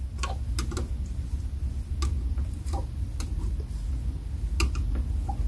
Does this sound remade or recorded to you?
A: recorded